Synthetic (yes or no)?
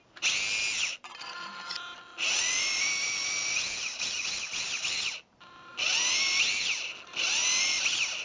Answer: no